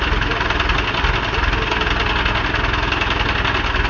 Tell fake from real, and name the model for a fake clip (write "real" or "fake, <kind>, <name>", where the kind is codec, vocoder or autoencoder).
real